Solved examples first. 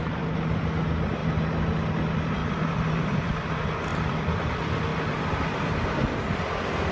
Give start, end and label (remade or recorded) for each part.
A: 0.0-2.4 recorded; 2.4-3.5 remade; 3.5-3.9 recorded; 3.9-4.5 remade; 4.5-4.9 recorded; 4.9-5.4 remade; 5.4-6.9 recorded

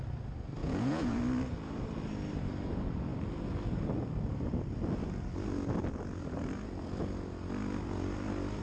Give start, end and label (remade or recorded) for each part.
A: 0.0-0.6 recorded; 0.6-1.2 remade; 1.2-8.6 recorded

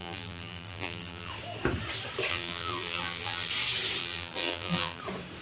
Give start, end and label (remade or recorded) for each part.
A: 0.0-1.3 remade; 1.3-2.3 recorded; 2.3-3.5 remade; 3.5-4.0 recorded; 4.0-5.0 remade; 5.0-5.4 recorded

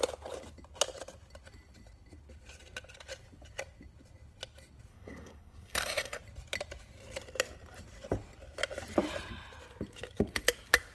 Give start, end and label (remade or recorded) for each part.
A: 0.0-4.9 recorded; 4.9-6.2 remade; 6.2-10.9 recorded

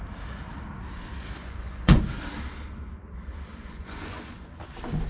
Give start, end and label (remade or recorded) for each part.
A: 0.0-1.4 recorded; 1.4-2.0 remade; 2.0-3.6 recorded; 3.6-4.5 remade; 4.5-5.1 recorded

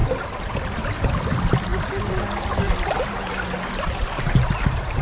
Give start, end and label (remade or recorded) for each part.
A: 0.0-5.0 recorded